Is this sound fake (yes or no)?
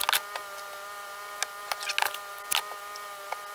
no